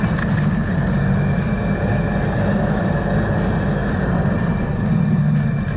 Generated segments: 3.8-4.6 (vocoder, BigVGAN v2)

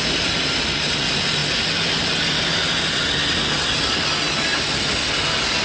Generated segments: none